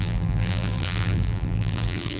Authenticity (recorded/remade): remade